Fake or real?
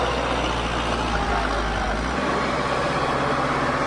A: real